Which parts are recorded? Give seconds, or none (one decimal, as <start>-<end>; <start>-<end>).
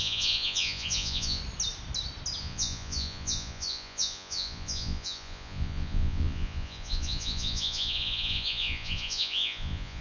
1.4-2.4